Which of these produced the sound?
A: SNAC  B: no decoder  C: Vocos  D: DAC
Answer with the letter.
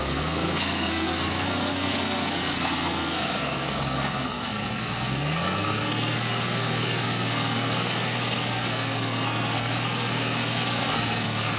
A